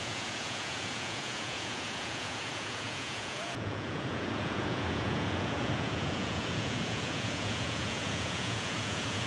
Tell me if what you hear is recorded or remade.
remade